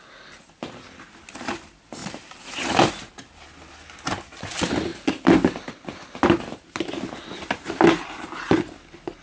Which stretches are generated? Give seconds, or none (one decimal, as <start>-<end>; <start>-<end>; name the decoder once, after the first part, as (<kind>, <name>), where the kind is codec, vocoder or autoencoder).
2.0-2.9 (vocoder, BigVGAN v2)

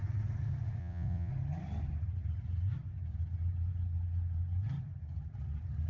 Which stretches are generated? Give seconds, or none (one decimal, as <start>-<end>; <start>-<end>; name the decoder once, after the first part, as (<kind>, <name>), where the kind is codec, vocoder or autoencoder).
0.8-1.3 (vocoder, WaveNeXt)

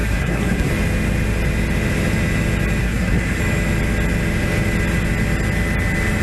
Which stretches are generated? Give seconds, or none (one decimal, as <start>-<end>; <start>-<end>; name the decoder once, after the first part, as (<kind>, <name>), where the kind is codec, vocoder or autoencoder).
0.0-0.7 (codec, SNAC); 2.8-3.4